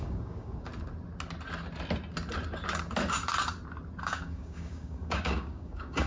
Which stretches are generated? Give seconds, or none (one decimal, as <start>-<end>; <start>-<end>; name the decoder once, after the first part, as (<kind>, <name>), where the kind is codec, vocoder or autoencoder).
0.0-0.7 (codec, DAC); 4.0-6.1